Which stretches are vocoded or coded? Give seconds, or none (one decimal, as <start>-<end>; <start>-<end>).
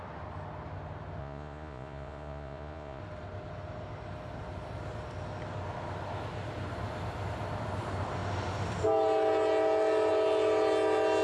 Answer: 1.2-3.0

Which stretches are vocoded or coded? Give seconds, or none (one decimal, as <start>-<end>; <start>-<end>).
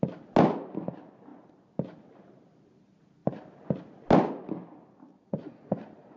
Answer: 5.1-6.2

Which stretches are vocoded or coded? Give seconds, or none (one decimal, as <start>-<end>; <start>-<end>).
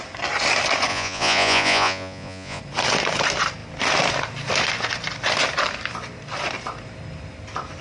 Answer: 0.9-2.6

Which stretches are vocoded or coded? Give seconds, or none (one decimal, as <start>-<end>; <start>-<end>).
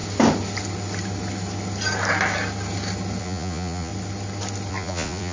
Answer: 3.2-3.9; 4.7-5.3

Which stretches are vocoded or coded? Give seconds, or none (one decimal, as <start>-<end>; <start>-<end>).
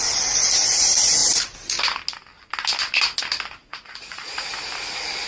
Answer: 3.6-4.5